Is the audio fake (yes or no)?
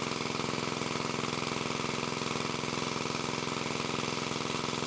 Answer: no